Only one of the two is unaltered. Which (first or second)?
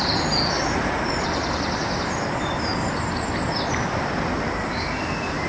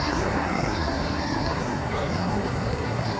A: first